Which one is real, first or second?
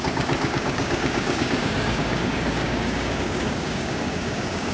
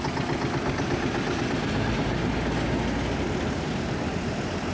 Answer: second